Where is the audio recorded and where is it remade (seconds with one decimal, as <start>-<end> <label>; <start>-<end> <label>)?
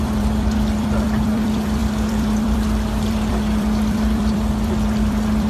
0.0-5.5 remade